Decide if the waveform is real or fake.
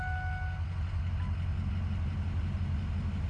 real